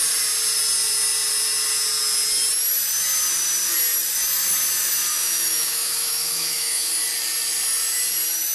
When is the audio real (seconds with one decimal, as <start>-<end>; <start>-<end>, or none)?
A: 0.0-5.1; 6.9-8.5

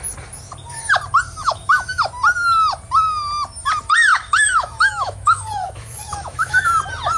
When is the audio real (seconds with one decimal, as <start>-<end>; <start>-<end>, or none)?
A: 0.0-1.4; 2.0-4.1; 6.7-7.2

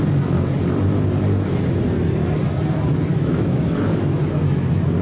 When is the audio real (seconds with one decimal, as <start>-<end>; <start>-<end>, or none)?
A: 0.0-3.1; 4.2-5.0

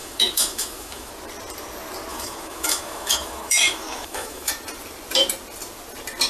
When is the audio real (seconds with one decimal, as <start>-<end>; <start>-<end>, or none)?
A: 1.1-2.1; 4.5-6.3

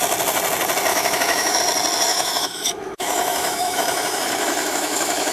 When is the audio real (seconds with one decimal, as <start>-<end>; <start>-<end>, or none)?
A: 0.0-0.9; 1.6-2.1

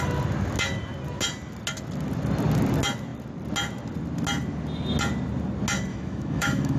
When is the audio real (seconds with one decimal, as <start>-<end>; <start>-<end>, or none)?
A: 0.0-5.9